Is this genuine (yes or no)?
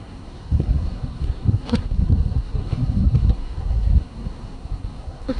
no